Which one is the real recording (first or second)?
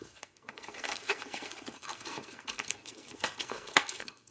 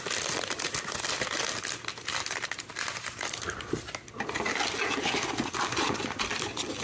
second